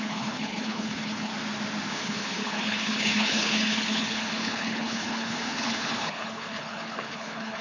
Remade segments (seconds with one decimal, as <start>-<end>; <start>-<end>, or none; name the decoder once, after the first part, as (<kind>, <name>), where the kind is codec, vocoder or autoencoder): 0.0-1.3 (codec, HILCodec); 1.9-7.6